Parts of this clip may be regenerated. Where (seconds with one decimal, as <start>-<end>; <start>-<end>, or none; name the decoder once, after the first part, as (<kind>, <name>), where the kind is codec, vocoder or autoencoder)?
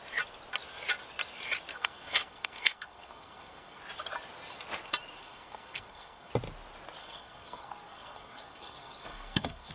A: 1.7-3.8 (codec, SNAC); 5.2-6.3; 7.0-9.7